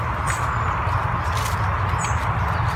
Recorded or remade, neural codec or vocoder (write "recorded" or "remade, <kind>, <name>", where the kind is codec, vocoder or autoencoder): recorded